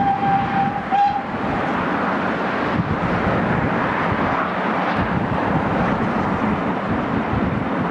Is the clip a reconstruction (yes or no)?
no